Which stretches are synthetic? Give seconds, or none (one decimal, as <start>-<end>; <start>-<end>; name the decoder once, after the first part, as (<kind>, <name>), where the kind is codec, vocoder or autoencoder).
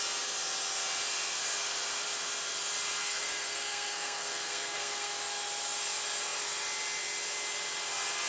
3.0-5.1 (codec, SNAC)